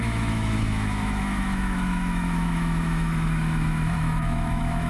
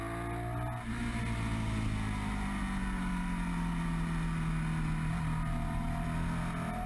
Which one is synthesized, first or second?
first